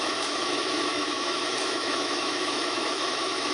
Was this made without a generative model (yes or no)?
no